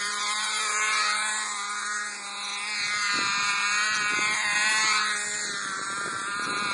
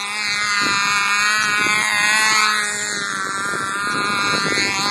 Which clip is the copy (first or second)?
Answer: first